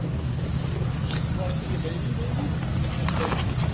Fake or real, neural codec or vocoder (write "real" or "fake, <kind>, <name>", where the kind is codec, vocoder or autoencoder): real